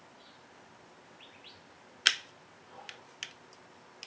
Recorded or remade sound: recorded